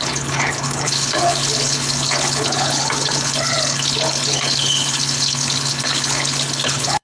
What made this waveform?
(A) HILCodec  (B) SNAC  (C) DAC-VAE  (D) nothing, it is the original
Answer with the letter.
A